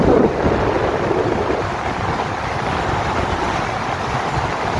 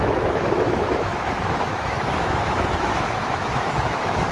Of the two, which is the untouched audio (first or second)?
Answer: first